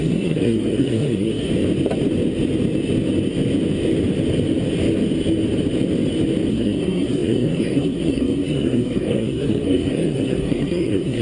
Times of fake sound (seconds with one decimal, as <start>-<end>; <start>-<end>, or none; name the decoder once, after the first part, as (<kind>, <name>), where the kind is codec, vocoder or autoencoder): 0.0-1.5 (codec, SNAC); 6.5-11.2